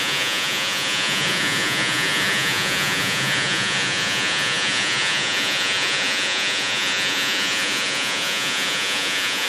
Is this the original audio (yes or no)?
no